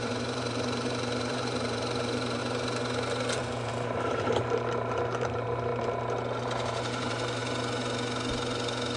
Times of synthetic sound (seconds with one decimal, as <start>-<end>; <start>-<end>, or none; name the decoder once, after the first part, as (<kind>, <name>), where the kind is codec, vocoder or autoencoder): 0.0-2.4 (vocoder, BigVGAN v2); 3.4-5.7; 6.4-7.4